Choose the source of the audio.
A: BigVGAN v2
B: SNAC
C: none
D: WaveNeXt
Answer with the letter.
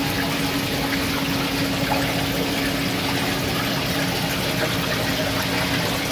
C